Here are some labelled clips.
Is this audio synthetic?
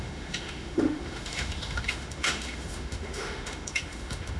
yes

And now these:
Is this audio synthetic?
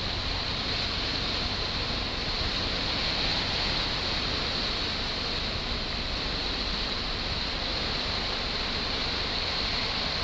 no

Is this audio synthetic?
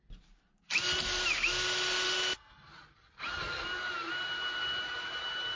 no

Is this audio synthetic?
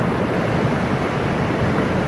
no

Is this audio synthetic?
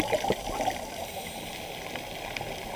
no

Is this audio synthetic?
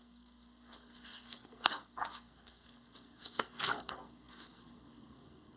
yes